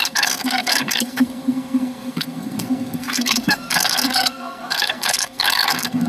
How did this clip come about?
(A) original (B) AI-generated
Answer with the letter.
B